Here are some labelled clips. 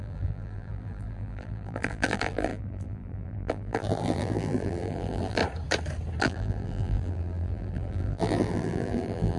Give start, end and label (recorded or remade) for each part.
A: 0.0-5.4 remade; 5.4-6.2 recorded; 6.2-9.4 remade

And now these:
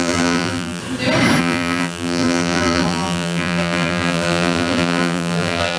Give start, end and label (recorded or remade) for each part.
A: 0.0-0.8 remade; 0.8-1.4 recorded; 1.4-5.8 remade

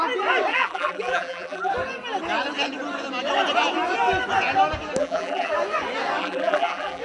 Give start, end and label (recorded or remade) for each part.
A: 0.0-0.5 recorded; 0.5-1.7 remade; 1.7-5.0 recorded; 5.0-5.5 remade; 5.5-6.2 recorded; 6.2-7.0 remade

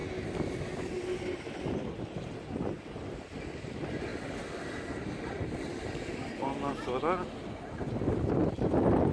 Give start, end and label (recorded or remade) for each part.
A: 0.0-1.0 recorded; 1.0-4.1 remade; 4.1-6.7 recorded; 6.7-8.4 remade; 8.4-9.1 recorded